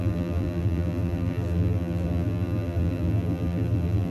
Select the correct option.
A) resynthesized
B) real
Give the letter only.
A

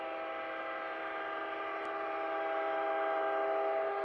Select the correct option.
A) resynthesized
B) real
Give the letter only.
B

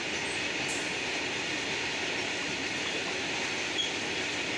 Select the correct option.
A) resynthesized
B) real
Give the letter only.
B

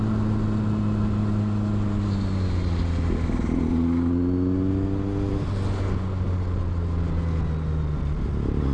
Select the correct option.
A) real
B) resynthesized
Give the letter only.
A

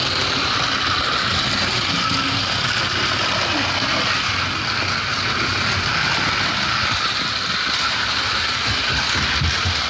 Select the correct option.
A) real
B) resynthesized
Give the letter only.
A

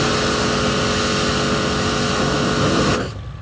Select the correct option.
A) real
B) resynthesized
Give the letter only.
A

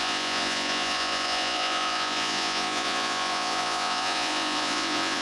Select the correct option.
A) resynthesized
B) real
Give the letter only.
A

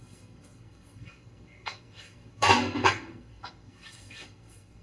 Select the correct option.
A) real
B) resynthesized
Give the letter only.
B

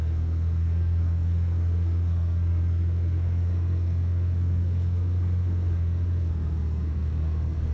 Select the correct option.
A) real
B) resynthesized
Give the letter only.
B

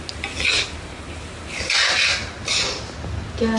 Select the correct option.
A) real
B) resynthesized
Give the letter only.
A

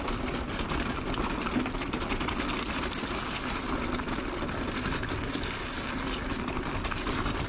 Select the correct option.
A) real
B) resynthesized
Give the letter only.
A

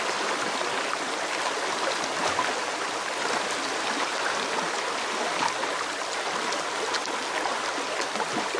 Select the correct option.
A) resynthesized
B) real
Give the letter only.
B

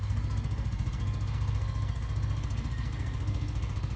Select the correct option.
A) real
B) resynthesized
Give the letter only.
B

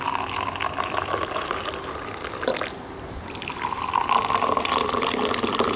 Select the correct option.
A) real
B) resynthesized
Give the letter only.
A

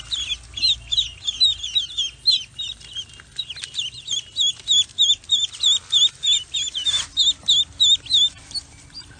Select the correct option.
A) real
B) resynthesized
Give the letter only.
A